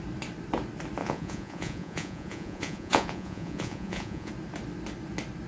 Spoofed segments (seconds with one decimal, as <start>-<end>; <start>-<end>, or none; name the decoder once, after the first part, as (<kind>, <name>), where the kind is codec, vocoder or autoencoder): 1.0-4.3 (vocoder, Vocos)